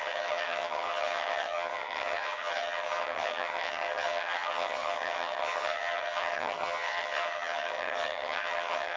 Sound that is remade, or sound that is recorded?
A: remade